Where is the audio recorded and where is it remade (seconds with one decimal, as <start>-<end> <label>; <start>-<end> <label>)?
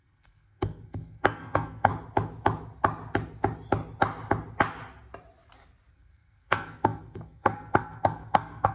0.0-1.9 remade; 1.9-5.9 recorded; 5.9-8.7 remade